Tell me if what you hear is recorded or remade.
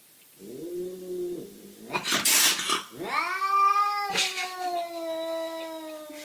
recorded